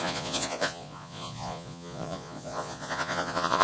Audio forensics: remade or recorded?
remade